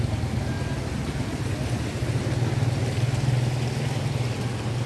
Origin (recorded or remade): recorded